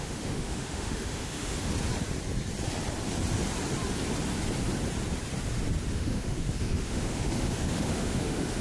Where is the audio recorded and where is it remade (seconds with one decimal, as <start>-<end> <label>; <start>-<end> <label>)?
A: 0.0-1.7 remade; 1.7-5.9 recorded; 5.9-8.6 remade